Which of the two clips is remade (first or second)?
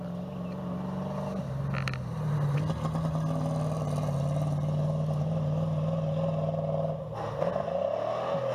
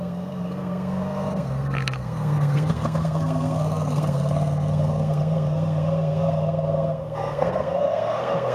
second